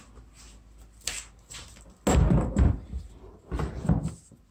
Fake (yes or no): no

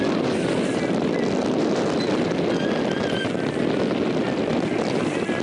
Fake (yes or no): no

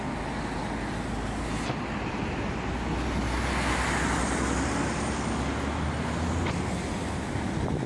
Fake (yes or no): no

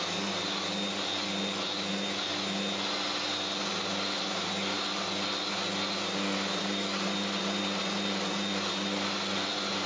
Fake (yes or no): no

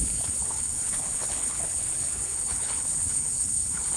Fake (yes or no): yes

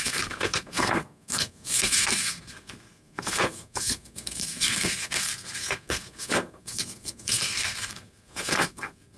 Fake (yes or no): yes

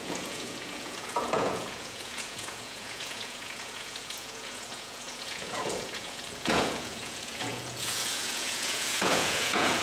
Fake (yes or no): yes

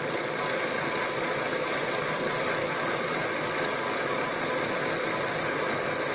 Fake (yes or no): no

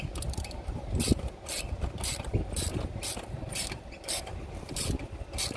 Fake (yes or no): yes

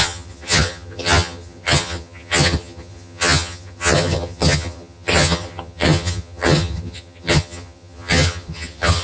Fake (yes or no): yes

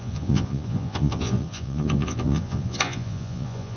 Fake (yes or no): yes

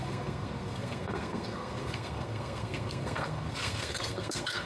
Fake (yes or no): yes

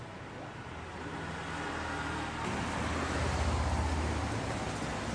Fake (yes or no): no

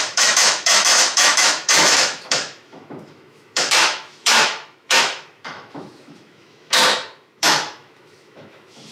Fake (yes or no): yes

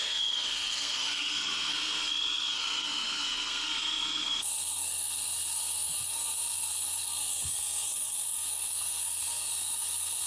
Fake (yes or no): yes